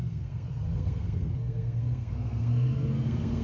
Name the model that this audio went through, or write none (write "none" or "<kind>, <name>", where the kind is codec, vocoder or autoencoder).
codec, SNAC